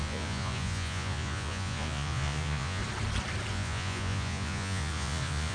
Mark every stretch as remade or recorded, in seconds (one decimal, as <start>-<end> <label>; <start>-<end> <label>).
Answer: 0.0-2.8 remade; 2.8-3.5 recorded; 3.5-5.5 remade